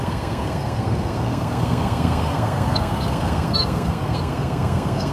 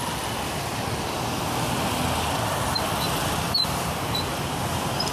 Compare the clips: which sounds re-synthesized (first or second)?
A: first